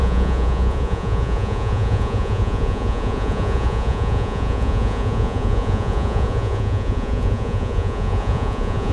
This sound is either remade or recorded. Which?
remade